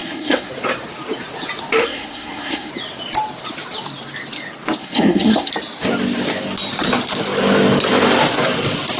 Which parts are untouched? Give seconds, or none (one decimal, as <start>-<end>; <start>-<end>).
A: 0.5-1.8; 2.7-4.8; 5.5-9.0